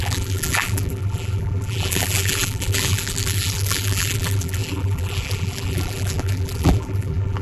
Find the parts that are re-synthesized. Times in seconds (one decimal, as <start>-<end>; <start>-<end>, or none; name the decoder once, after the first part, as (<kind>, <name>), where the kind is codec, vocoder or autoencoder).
0.0-7.4 (vocoder, BigVGAN v2)